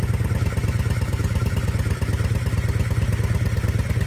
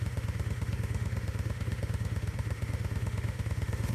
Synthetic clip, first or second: second